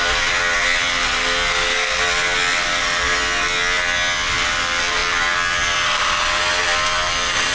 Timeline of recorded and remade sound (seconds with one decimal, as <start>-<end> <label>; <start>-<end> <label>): 0.0-1.5 recorded; 1.5-2.0 remade; 2.0-7.5 recorded